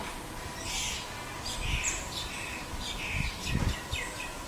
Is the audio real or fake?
real